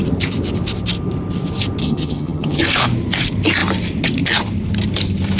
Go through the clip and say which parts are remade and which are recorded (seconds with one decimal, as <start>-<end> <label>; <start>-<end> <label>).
0.0-1.8 recorded; 1.8-2.6 remade; 2.6-5.4 recorded